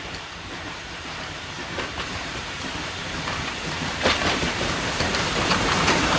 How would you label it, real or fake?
fake